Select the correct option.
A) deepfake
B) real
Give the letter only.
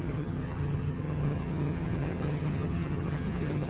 A